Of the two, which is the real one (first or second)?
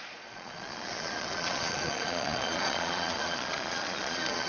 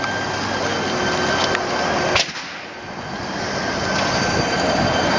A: second